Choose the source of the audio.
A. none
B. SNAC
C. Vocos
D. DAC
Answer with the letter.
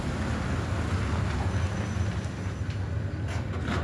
A